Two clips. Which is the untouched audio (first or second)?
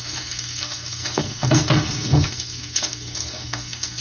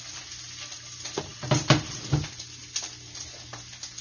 second